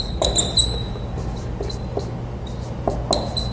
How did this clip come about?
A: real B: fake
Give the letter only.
A